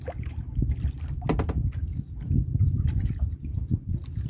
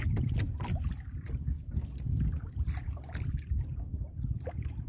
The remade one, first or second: second